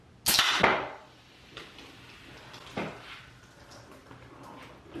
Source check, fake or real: real